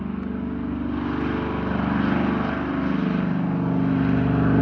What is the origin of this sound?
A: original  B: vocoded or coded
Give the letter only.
A